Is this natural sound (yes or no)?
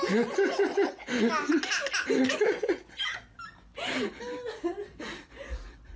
yes